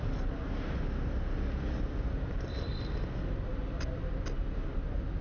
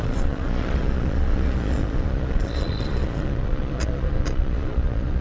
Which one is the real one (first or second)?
first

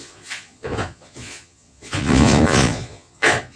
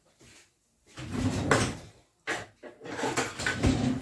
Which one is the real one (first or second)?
second